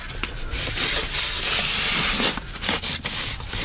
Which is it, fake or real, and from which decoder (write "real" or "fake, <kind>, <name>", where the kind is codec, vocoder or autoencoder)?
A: real